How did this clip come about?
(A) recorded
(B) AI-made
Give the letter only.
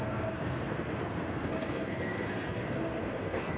B